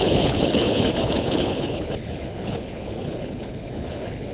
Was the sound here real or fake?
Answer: fake